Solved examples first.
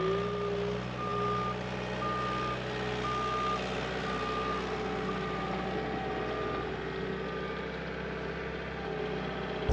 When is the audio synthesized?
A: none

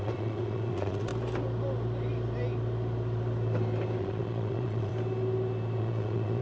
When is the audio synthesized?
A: 0.0-1.1 (vocoder, Vocos); 4.0-4.9; 5.8-6.4

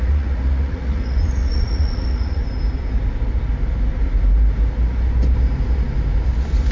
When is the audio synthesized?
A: 0.0-2.4 (vocoder, Vocos)

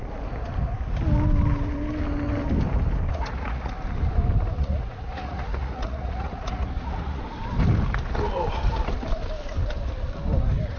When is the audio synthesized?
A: 3.1-3.7 (vocoder, Vocos); 4.6-7.2